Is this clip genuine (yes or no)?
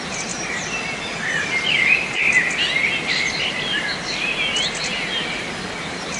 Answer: yes